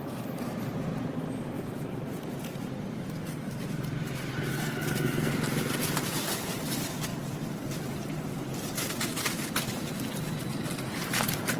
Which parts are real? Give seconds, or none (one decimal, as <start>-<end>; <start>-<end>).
0.0-4.5; 5.3-11.6